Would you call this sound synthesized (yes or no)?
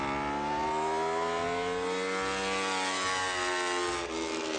no